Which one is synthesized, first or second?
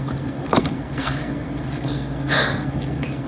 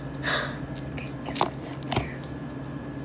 first